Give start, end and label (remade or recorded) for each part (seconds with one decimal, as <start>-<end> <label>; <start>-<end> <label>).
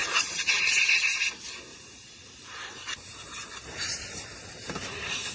0.0-1.2 remade; 1.2-1.7 recorded; 1.7-5.3 remade